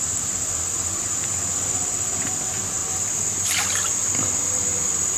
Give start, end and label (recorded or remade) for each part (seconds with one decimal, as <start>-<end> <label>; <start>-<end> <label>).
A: 0.0-5.2 recorded